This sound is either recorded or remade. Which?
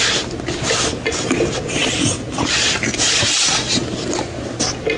recorded